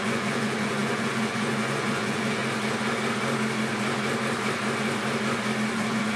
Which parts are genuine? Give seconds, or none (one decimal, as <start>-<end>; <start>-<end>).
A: 2.4-5.7